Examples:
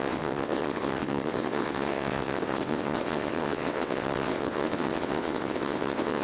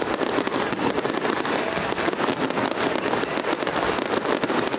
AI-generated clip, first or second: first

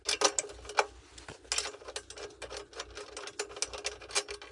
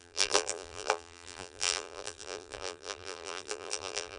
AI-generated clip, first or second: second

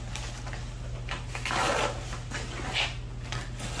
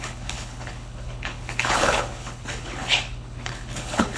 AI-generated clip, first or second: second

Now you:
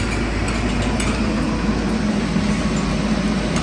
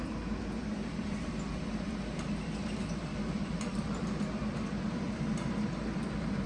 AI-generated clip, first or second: second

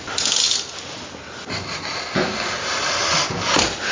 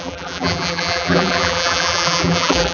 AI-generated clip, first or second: second